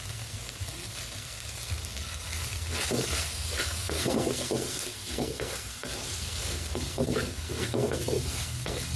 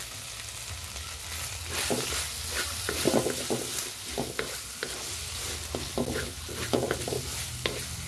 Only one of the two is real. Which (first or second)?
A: second